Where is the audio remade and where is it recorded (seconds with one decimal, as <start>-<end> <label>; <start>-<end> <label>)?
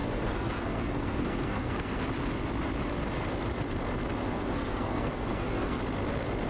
0.0-2.0 remade; 2.0-4.2 recorded; 4.2-5.8 remade; 5.8-6.5 recorded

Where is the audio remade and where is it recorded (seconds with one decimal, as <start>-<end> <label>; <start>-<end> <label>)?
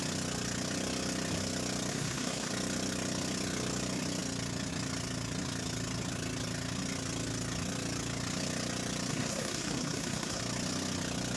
0.0-1.9 recorded; 1.9-2.5 remade; 2.5-9.1 recorded; 9.1-10.4 remade; 10.4-11.4 recorded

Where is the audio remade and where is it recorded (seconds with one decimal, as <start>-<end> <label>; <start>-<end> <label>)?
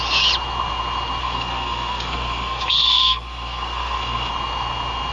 0.0-1.2 recorded; 1.2-4.3 remade; 4.3-5.1 recorded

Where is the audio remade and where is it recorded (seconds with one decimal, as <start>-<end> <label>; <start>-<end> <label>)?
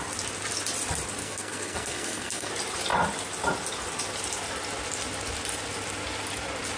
0.0-1.2 recorded; 1.2-2.5 remade; 2.5-6.8 recorded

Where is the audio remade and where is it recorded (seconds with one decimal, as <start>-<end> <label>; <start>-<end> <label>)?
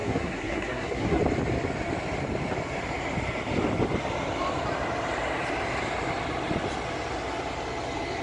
0.0-1.2 remade; 1.2-8.2 recorded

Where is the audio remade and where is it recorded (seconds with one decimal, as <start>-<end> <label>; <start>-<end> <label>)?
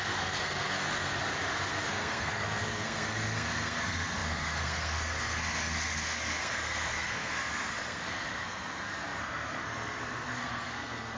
0.0-1.2 remade; 1.2-1.7 recorded; 1.7-11.2 remade